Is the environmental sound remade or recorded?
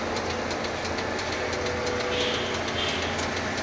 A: recorded